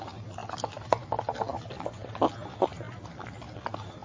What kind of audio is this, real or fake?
real